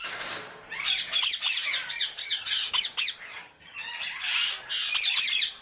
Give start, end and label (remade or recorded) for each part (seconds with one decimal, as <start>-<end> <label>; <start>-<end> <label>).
0.0-2.2 recorded; 2.2-2.7 remade; 2.7-3.3 recorded; 3.3-3.9 remade; 3.9-5.6 recorded